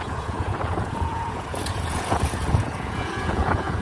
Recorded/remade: remade